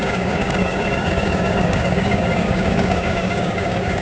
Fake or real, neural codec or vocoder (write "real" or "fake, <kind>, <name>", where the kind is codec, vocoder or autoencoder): fake, codec, DAC